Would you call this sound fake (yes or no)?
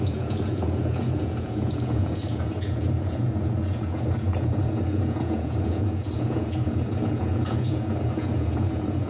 yes